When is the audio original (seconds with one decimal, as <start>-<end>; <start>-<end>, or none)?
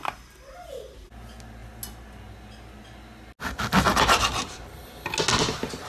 0.0-5.9